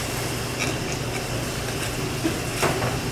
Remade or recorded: recorded